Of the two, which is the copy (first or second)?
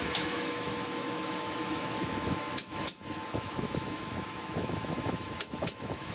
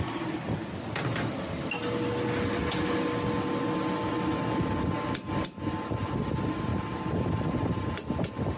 first